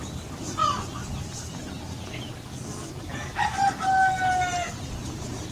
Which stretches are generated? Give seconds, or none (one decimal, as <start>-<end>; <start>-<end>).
none